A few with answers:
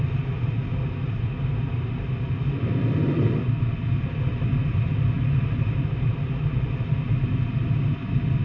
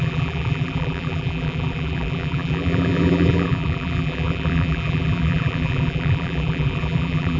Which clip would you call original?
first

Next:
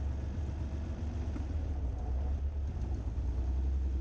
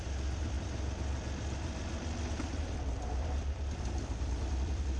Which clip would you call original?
first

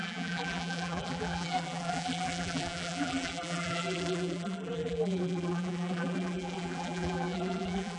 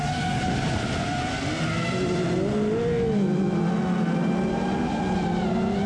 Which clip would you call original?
second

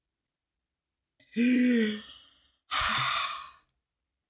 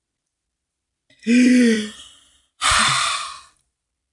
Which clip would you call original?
first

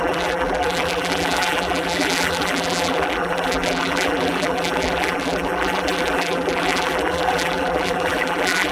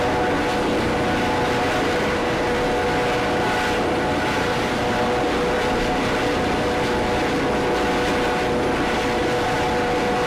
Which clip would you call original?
second